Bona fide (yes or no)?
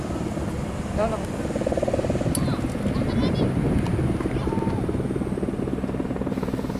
yes